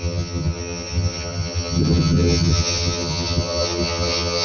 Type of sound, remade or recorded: remade